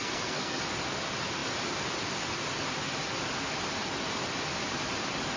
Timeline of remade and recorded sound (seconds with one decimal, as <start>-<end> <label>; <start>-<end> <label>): 0.0-0.6 remade; 0.6-5.4 recorded